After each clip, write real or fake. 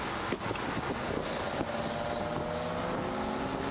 real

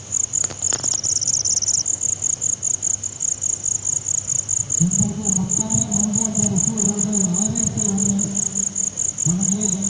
real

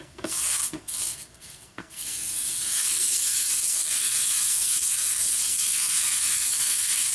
fake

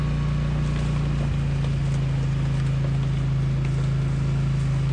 real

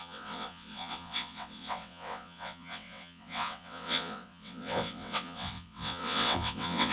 fake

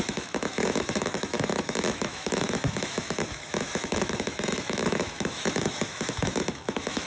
fake